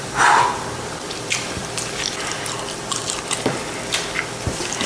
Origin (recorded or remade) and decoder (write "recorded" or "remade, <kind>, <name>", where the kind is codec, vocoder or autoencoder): remade, vocoder, BigVGAN v2